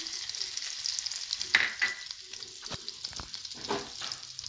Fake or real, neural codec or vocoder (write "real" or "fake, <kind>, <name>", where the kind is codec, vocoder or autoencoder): real